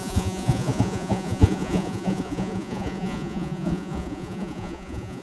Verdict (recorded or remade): remade